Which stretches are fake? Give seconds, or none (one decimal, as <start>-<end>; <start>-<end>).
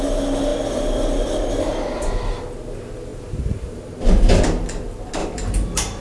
3.1-4.3; 5.2-6.0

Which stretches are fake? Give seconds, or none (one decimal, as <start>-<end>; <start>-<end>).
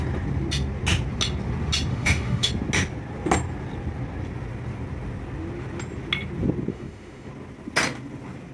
1.9-2.5; 6.7-7.3